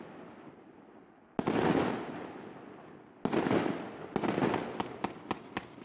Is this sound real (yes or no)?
yes